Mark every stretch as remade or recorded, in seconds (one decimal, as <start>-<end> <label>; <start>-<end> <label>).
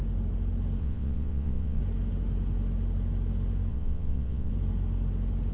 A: 0.0-0.8 recorded; 0.8-1.8 remade; 1.8-3.7 recorded; 3.7-4.5 remade; 4.5-5.5 recorded